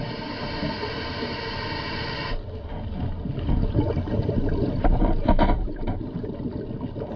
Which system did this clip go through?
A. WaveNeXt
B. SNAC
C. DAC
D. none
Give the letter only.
D